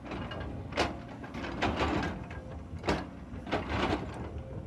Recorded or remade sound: recorded